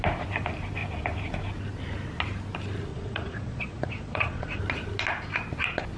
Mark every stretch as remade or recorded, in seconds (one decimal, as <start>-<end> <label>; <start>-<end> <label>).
0.0-2.9 recorded; 2.9-4.6 remade; 4.6-6.0 recorded